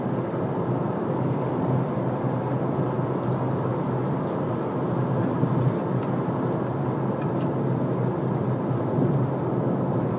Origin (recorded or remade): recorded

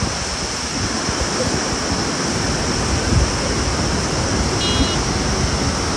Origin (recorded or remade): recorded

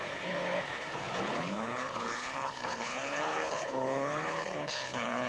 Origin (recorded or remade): remade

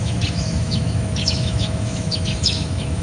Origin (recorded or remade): remade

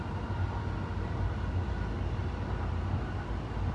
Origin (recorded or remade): recorded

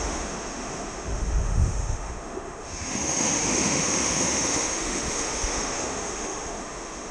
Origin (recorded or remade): remade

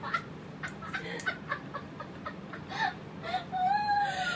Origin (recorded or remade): remade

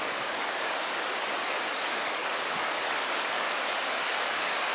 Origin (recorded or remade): remade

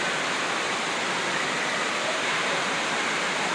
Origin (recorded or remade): remade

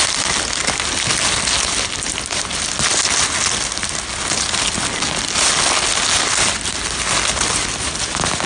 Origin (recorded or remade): recorded